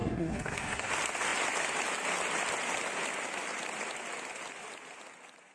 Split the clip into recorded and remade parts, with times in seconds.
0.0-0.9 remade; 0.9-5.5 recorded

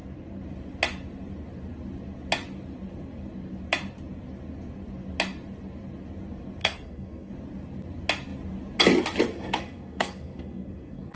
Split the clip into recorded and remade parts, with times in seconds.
0.0-6.6 recorded; 6.6-7.3 remade; 7.3-9.3 recorded; 9.3-11.2 remade

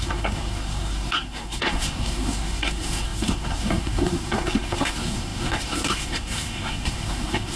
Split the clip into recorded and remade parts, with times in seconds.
0.0-7.6 remade

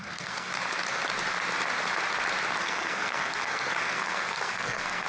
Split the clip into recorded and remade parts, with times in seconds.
0.0-0.5 remade; 0.5-2.6 recorded; 2.6-5.1 remade

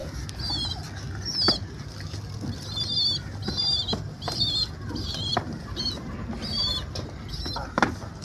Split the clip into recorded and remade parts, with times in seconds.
0.0-8.2 recorded